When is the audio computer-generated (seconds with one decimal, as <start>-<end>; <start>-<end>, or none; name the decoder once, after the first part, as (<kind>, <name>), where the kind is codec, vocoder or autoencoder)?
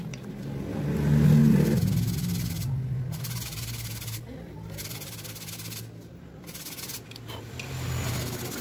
none